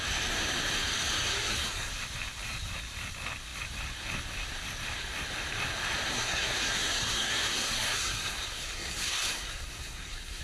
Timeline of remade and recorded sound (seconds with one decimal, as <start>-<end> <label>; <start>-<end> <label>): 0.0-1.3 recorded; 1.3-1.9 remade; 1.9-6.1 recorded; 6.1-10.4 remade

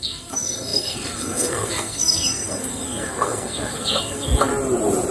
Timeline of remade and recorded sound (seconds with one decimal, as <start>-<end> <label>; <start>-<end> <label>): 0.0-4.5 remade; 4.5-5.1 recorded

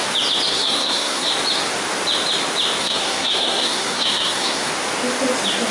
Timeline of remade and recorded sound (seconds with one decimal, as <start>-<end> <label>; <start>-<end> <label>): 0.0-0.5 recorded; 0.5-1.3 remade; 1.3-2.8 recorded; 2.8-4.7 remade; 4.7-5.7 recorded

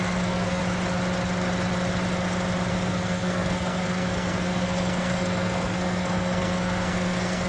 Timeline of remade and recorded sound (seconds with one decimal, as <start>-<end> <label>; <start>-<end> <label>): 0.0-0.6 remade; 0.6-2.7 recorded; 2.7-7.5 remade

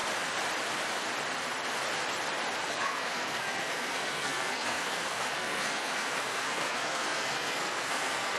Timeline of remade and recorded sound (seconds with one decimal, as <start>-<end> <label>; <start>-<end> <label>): 0.0-2.7 recorded; 2.7-8.4 remade

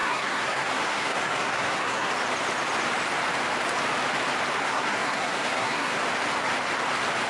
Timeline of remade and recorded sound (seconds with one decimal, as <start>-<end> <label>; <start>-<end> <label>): 0.0-2.1 remade; 2.1-4.6 recorded; 4.6-6.0 remade; 6.0-7.3 recorded